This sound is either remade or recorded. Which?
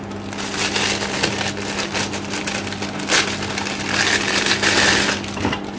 recorded